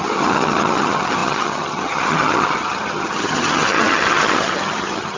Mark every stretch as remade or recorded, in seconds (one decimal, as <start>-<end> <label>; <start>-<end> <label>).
0.0-5.2 remade